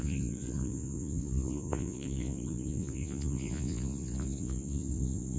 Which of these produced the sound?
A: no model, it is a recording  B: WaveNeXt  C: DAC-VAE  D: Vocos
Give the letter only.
D